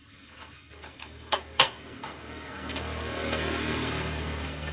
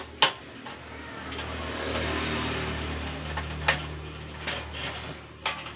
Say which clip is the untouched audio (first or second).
second